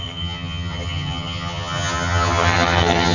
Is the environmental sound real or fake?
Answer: fake